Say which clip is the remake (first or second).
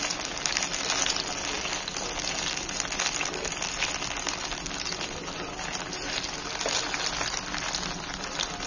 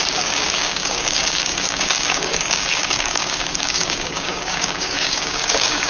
second